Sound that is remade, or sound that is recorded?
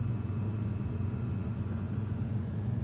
remade